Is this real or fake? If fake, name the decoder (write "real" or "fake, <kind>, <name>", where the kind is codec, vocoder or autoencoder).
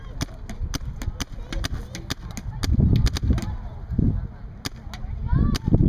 real